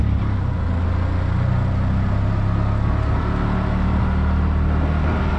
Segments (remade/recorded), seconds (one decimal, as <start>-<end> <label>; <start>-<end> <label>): 0.0-5.4 recorded